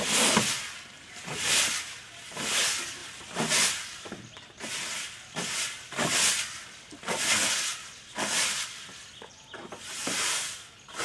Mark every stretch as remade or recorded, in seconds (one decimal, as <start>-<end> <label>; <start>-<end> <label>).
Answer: 0.0-11.0 recorded